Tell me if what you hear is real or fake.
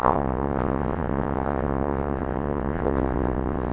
fake